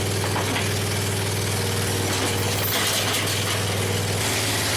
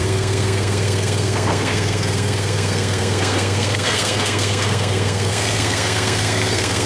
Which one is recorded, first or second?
first